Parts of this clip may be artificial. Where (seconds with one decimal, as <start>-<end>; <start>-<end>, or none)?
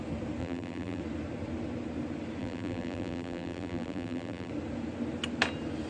0.4-1.0; 2.4-4.5